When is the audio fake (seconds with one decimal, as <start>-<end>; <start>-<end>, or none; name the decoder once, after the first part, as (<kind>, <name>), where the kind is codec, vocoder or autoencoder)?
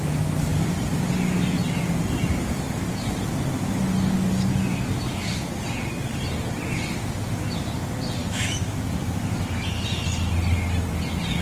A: 4.7-5.3 (autoencoder, DAC-VAE); 8.2-8.8